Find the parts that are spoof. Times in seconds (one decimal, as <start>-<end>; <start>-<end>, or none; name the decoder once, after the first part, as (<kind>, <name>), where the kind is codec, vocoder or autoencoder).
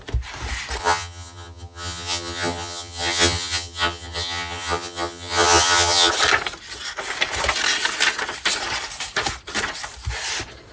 0.8-6.1 (vocoder, HiFi-GAN)